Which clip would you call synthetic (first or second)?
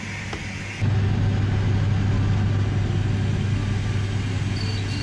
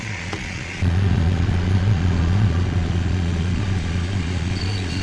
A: second